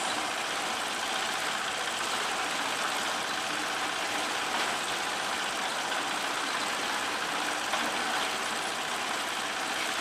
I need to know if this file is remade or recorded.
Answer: recorded